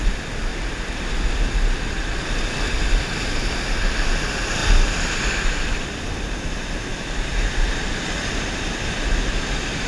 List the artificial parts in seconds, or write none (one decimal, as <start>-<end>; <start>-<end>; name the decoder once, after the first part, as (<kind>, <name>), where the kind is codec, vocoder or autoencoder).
0.5-3.9 (vocoder, BigVGAN v2); 4.6-6.1; 6.9-9.4